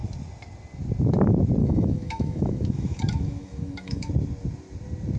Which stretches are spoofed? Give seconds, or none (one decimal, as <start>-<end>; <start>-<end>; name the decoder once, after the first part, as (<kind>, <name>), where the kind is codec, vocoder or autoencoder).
1.6-4.1 (autoencoder, DAC-VAE)